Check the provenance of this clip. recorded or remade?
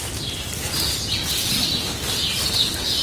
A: recorded